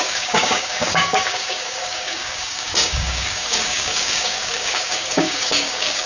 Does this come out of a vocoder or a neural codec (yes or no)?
yes